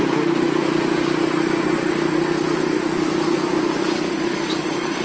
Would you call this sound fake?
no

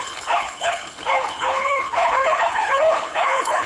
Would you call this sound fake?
yes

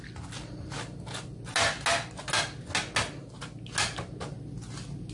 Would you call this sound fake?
no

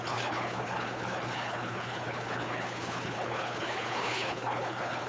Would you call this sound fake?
yes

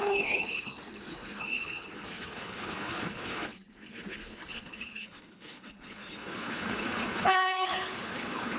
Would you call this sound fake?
yes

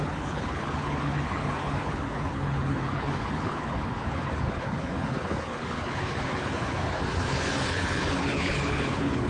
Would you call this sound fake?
yes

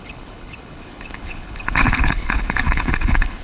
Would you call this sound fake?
yes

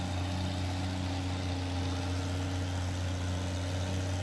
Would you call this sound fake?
no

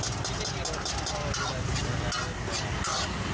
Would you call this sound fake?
no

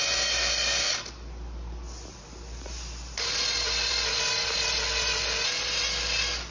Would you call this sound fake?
no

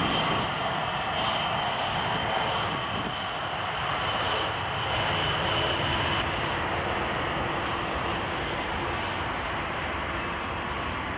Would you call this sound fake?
no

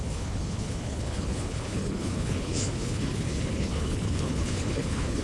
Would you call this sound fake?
yes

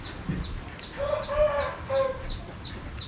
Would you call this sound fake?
no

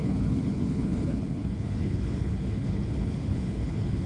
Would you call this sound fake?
yes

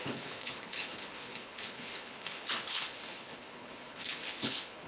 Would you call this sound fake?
yes